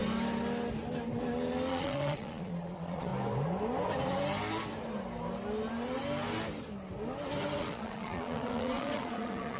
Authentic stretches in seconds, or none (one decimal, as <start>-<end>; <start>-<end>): 0.0-1.7; 3.1-7.6